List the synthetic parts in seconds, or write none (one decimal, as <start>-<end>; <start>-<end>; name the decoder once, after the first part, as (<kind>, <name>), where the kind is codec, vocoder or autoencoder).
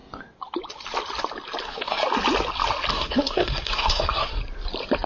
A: 1.6-2.0 (codec, SNAC); 2.9-4.4